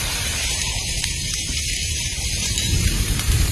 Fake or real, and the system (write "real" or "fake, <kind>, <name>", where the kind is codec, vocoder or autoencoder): fake, vocoder, BigVGAN v2